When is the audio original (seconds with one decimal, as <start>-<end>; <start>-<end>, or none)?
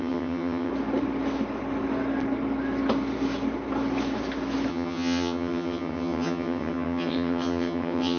0.7-4.7